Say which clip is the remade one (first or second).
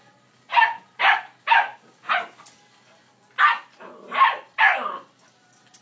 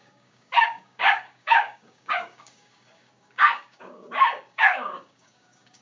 second